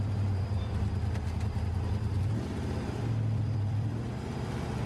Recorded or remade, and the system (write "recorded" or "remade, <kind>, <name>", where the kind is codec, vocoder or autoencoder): remade, vocoder, BigVGAN v2